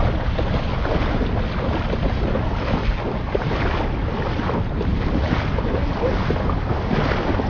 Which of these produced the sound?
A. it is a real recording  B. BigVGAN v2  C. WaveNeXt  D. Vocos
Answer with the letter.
A